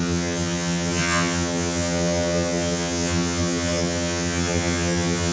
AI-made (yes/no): yes